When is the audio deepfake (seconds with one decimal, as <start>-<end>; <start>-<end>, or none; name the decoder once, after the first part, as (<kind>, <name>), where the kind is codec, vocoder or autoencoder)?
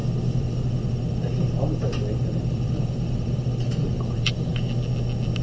2.5-4.5 (vocoder, BigVGAN v2)